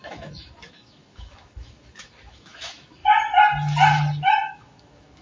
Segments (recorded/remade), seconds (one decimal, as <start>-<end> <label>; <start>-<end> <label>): 0.0-3.0 remade; 3.0-4.5 recorded; 4.5-5.2 remade